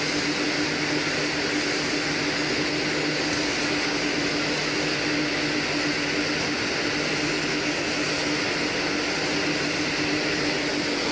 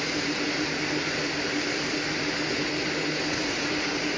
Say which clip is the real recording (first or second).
first